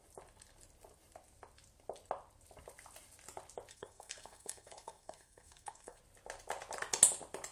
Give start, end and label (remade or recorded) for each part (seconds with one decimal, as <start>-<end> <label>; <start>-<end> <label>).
0.0-3.7 recorded; 3.7-6.0 remade; 6.0-7.5 recorded